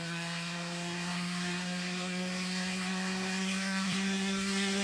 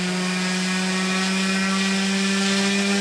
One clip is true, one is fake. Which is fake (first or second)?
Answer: first